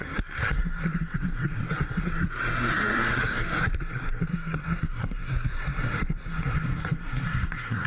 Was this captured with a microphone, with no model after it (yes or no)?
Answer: no